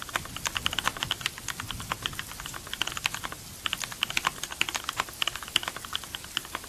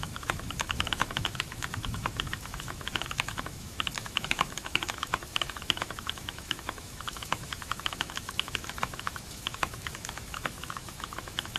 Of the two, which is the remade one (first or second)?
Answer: second